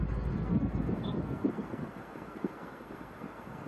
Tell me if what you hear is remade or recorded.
remade